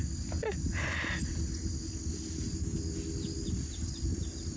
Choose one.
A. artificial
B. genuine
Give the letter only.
B